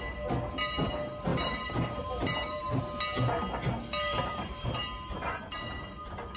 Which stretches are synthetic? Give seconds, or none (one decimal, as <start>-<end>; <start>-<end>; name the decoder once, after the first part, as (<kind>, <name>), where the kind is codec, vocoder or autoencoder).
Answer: 1.3-2.8 (vocoder, BigVGAN v2); 4.1-4.7